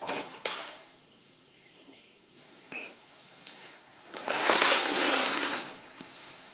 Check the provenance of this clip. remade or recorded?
remade